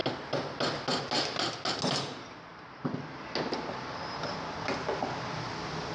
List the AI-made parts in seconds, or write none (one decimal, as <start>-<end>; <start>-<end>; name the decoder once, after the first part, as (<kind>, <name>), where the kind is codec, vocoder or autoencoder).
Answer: none